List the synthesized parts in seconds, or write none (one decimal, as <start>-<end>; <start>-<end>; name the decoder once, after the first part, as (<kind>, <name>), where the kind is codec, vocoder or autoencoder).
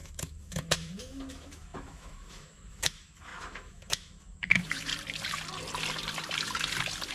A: 0.0-4.9 (autoencoder, DAC-VAE)